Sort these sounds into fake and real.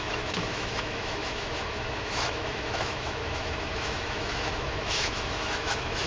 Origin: fake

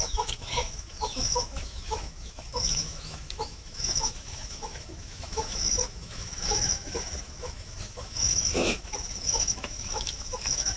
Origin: fake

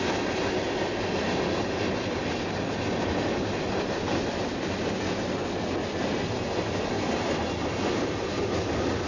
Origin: real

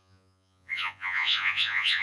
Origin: fake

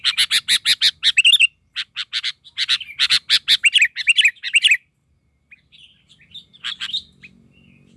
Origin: real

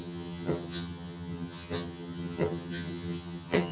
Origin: fake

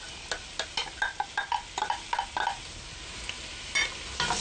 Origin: real